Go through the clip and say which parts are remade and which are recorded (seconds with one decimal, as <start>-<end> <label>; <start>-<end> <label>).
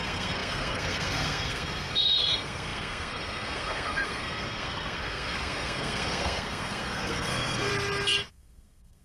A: 0.0-7.7 remade; 7.7-8.3 recorded; 8.3-9.0 remade